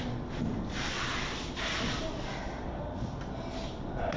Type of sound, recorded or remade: recorded